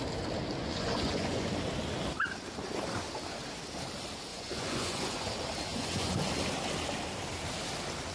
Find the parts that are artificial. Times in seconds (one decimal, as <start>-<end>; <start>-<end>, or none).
0.6-1.5; 4.3-5.3; 5.7-6.3